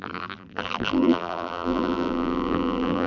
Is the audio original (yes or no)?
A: no